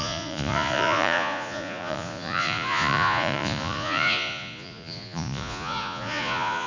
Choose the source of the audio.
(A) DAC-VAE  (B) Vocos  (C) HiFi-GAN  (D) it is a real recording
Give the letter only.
B